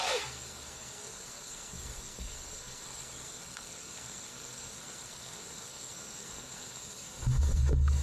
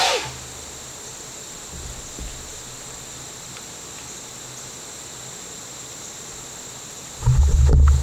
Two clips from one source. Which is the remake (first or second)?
first